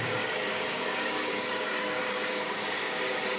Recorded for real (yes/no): no